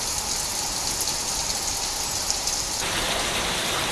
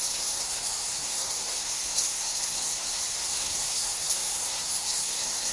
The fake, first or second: second